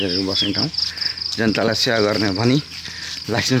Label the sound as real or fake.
real